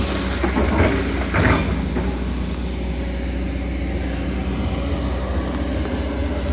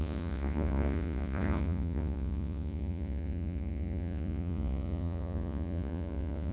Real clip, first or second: first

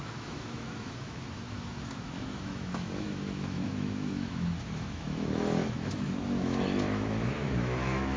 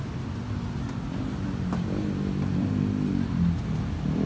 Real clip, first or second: second